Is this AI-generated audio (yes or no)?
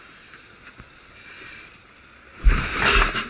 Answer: no